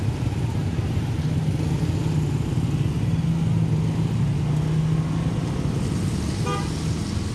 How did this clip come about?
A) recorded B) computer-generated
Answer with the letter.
A